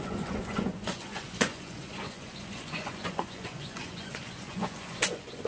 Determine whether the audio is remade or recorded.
remade